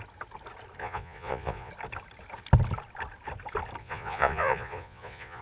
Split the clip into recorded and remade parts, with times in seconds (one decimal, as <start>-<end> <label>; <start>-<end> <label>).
0.0-0.8 recorded; 0.8-1.7 remade; 1.7-3.8 recorded; 3.8-5.4 remade